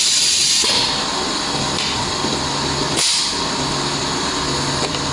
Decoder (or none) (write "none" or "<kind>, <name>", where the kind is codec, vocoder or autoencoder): none